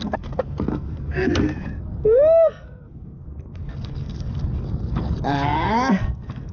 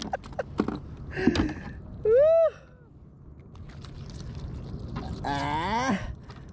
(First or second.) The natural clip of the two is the second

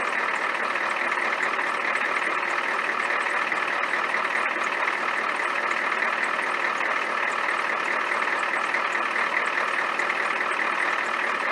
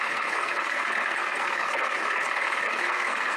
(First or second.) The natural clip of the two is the first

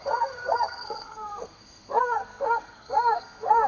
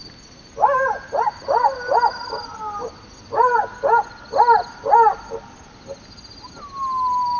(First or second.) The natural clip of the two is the second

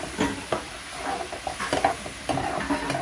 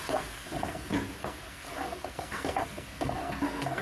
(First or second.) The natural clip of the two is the first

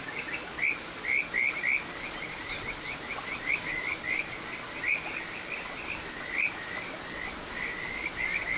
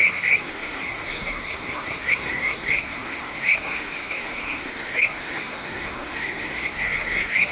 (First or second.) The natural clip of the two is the first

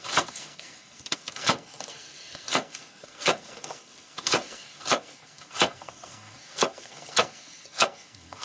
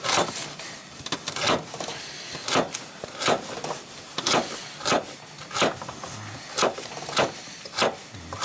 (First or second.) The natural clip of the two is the second